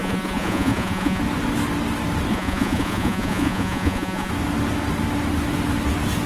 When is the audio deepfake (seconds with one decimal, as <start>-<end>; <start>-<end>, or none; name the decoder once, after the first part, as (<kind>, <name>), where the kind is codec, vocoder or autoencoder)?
0.0-1.2 (vocoder, Vocos); 2.3-4.3